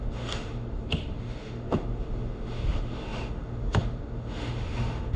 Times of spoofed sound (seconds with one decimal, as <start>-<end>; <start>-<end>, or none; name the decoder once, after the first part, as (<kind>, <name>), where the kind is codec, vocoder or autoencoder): 0.0-5.2 (autoencoder, DAC-VAE)

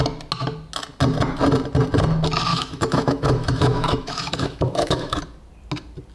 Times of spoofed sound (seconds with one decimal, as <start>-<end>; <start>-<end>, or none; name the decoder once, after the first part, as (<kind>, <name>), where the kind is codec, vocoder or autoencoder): 2.5-5.2 (autoencoder, DAC-VAE)

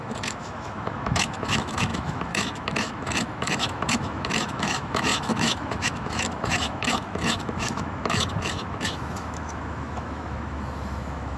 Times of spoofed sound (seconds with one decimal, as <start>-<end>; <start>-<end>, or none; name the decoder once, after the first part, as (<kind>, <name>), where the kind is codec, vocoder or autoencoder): 0.0-11.4 (autoencoder, DAC-VAE)

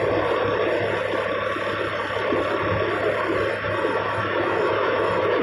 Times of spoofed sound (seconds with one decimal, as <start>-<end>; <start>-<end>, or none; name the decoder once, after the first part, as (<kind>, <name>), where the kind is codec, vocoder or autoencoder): 3.5-5.4 (autoencoder, DAC-VAE)

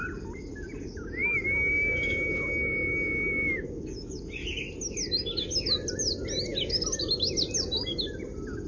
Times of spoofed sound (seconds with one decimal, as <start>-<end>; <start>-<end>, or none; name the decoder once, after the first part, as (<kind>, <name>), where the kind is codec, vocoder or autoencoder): 1.2-4.2 (autoencoder, DAC-VAE)

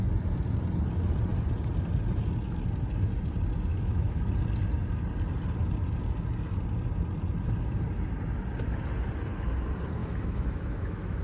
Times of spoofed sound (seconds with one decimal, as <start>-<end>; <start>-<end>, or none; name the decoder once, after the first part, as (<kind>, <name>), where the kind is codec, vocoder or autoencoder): 3.7-4.3 (autoencoder, DAC-VAE); 10.0-11.2

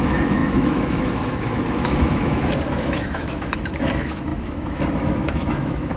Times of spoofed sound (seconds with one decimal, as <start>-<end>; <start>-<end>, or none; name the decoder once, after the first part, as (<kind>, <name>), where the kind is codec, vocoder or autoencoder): 0.0-6.0 (autoencoder, DAC-VAE)